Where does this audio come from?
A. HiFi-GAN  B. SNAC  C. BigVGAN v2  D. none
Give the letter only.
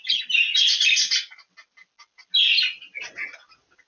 D